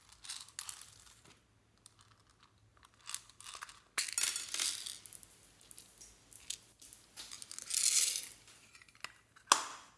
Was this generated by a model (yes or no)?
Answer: no